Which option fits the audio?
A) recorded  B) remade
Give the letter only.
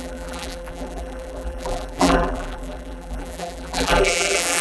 B